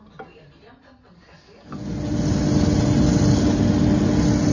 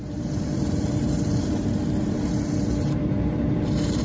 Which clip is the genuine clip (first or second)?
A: first